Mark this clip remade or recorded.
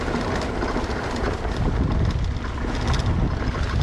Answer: recorded